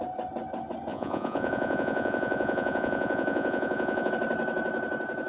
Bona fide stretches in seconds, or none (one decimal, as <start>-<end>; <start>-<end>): 0.0-0.9; 4.1-5.3